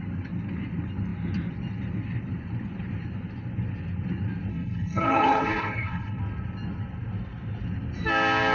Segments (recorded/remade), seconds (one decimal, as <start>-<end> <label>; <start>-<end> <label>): 0.0-4.5 recorded; 4.5-6.2 remade; 6.2-8.5 recorded